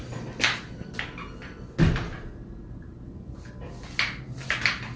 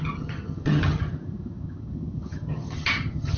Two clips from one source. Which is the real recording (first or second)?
first